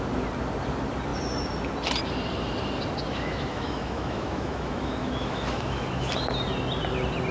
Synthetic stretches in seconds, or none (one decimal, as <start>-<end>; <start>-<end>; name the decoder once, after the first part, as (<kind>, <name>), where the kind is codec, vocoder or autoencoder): 3.1-6.1 (autoencoder, DAC-VAE)